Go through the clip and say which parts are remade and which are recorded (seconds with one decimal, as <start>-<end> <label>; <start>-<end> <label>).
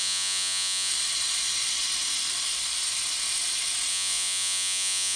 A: 0.0-0.9 remade; 0.9-3.9 recorded; 3.9-5.2 remade